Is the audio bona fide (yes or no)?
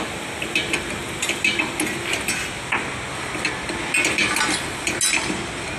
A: yes